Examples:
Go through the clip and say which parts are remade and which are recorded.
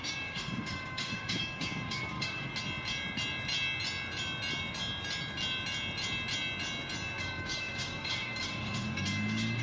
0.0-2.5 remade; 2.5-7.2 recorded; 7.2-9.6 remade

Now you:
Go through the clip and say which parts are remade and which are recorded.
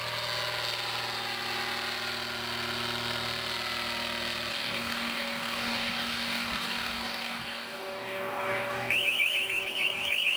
0.0-4.5 recorded; 4.5-10.4 remade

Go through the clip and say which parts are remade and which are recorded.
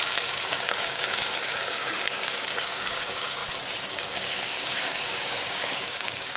0.0-3.4 remade; 3.4-3.9 recorded; 3.9-6.4 remade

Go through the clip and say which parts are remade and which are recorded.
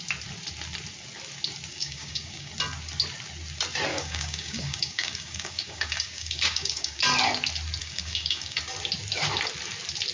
0.0-1.7 recorded; 1.7-2.5 remade; 2.5-3.9 recorded; 3.9-7.0 remade; 7.0-7.8 recorded; 7.8-8.6 remade; 8.6-10.1 recorded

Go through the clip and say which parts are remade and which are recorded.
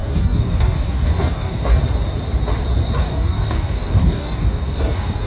0.0-1.8 remade; 1.8-3.0 recorded; 3.0-5.3 remade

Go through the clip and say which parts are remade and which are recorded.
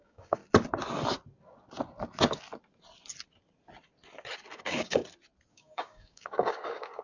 0.0-0.4 remade; 0.4-4.6 recorded; 4.6-5.0 remade; 5.0-5.5 recorded; 5.5-7.0 remade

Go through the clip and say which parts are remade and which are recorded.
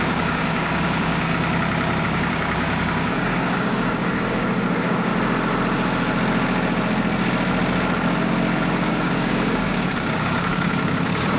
0.0-1.3 remade; 1.3-2.0 recorded; 2.0-5.1 remade; 5.1-8.9 recorded; 8.9-11.4 remade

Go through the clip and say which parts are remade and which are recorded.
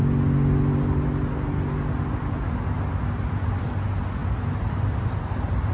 0.0-5.7 recorded